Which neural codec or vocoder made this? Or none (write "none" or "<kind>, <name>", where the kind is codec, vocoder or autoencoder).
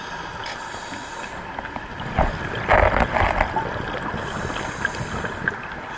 none